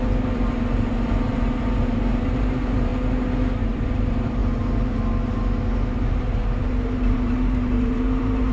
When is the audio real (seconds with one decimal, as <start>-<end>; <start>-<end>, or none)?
2.9-3.6; 4.4-6.1